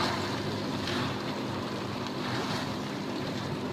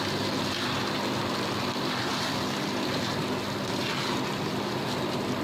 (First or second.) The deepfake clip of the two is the first